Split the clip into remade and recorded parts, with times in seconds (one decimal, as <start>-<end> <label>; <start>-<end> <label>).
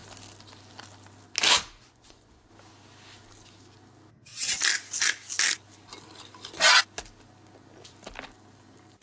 0.0-1.6 recorded; 1.6-2.5 remade; 2.5-9.0 recorded